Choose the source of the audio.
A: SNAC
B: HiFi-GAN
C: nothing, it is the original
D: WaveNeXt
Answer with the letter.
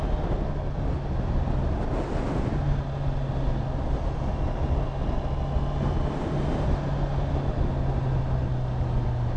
C